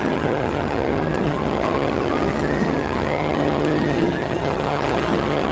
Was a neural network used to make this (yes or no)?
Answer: yes